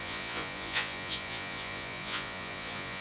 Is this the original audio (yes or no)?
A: no